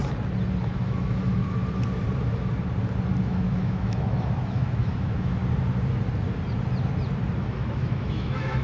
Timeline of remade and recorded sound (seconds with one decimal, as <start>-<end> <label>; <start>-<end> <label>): 0.0-0.6 recorded; 0.6-1.4 remade; 1.4-3.2 recorded; 3.2-5.4 remade; 5.4-7.4 recorded; 7.4-8.6 remade